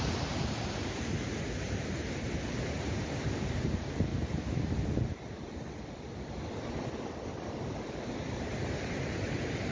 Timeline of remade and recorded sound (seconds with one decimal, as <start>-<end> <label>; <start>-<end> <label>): 0.0-4.1 remade; 4.1-8.0 recorded; 8.0-9.7 remade

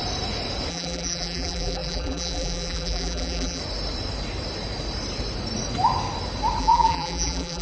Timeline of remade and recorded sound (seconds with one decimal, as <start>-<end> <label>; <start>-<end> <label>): 0.0-0.7 recorded; 0.7-3.6 remade; 3.6-6.6 recorded; 6.6-7.6 remade

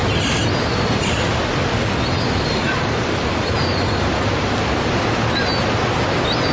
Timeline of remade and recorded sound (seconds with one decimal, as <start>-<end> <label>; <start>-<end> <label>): 0.0-6.5 recorded